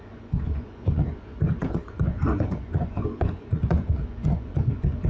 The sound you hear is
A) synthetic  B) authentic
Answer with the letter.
A